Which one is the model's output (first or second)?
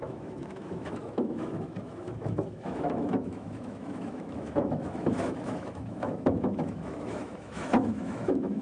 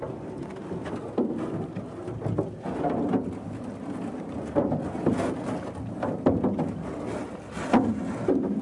first